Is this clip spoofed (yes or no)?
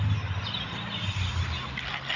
no